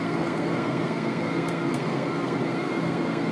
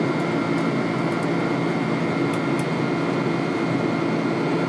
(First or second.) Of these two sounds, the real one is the second